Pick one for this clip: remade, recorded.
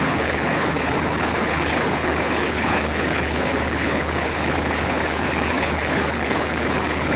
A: remade